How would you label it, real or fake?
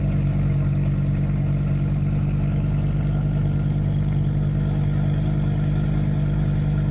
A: real